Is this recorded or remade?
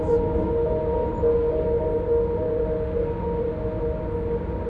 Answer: recorded